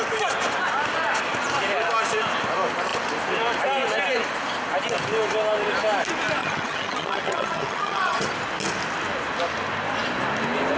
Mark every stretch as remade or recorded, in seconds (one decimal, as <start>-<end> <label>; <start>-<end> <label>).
0.0-6.4 recorded; 6.4-8.3 remade; 8.3-10.8 recorded